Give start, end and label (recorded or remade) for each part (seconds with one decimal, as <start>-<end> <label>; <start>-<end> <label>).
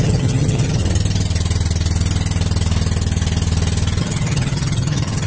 0.0-0.8 remade; 0.8-4.0 recorded; 4.0-5.3 remade